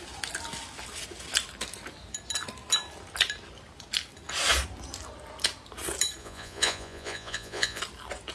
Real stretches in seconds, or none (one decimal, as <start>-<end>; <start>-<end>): 0.0-6.2; 7.8-8.3